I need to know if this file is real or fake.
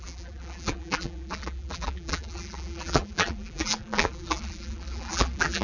fake